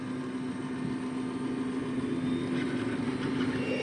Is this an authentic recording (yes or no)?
yes